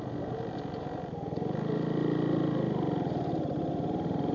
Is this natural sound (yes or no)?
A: yes